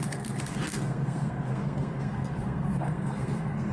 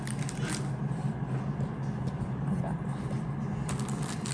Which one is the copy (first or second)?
first